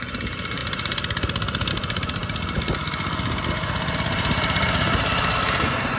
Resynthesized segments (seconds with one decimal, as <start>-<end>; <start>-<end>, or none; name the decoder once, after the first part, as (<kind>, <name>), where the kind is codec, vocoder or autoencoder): 0.0-0.6 (vocoder, BigVGAN v2); 1.7-2.2; 4.0-6.0